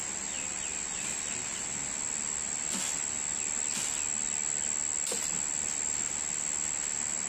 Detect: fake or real real